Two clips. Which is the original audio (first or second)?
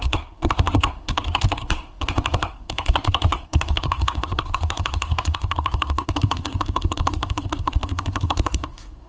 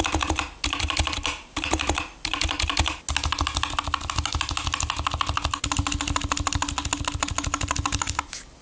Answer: second